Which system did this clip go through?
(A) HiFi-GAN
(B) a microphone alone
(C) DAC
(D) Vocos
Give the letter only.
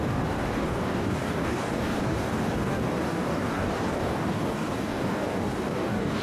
C